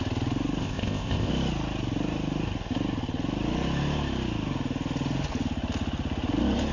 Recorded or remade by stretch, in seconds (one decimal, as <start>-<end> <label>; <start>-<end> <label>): 0.0-0.6 recorded; 0.6-1.3 remade; 1.3-6.7 recorded